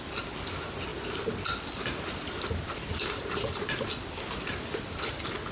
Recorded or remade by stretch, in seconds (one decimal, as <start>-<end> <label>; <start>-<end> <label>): 0.0-5.5 recorded